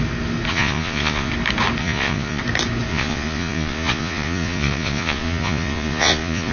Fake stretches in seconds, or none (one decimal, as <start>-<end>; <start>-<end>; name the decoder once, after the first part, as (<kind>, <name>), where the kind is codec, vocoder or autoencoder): 0.5-1.3 (vocoder, Vocos); 1.8-2.4; 2.9-6.5